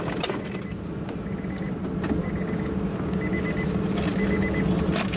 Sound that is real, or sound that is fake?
real